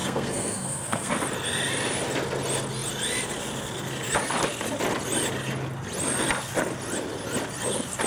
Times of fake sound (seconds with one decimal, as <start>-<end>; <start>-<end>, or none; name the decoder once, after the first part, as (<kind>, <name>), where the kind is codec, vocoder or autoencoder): 0.0-1.1 (codec, SNAC)